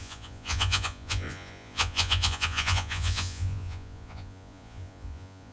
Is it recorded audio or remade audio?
remade